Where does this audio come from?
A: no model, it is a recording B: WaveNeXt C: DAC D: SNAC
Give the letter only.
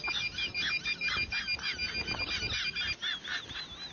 A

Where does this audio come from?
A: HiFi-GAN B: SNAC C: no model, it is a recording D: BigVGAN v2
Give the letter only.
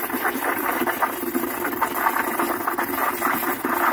D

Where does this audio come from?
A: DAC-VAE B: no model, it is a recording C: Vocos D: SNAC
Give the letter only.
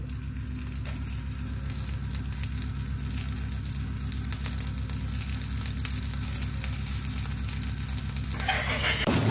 B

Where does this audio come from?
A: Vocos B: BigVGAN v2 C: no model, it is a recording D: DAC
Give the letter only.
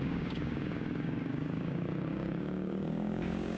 D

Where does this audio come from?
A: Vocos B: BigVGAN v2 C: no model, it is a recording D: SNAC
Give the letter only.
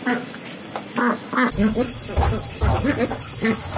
C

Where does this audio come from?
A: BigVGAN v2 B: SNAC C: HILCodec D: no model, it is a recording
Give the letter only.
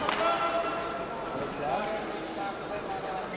D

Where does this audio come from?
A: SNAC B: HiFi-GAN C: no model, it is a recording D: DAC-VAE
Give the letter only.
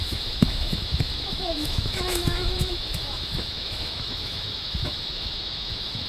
D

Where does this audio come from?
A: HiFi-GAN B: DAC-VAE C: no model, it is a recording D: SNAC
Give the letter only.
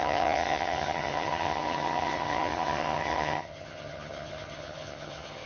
A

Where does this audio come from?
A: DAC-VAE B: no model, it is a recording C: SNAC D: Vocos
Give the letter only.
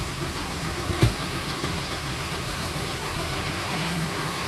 C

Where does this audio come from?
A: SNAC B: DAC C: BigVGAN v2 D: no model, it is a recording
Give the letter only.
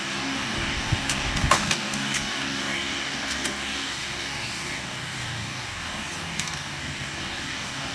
B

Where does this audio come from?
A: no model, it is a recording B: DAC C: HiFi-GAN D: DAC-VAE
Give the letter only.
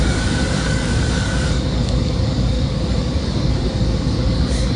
B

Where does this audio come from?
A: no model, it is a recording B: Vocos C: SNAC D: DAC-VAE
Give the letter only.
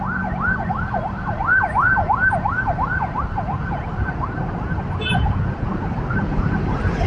A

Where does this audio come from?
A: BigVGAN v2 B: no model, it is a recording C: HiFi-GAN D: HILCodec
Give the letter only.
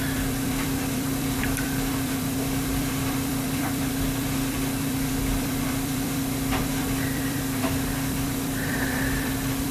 A